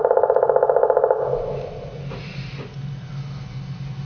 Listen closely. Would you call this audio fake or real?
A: real